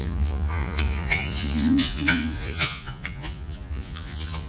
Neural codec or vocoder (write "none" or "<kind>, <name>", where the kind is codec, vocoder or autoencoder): vocoder, Vocos